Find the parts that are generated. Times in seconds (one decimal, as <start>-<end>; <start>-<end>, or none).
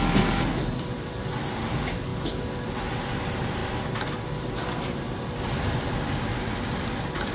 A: 0.0-2.1; 2.9-3.6; 4.4-7.3